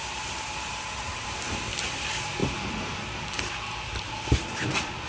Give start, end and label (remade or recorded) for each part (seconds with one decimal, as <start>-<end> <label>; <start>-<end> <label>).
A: 0.0-0.7 remade; 0.7-1.9 recorded; 1.9-5.1 remade